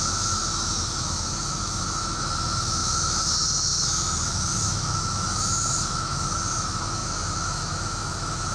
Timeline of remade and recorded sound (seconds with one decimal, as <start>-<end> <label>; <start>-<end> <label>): 0.0-8.5 remade